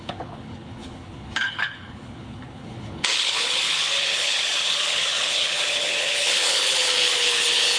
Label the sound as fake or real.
fake